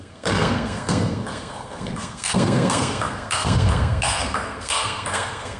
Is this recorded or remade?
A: remade